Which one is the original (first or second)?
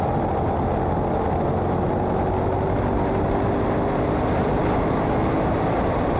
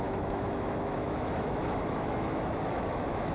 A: first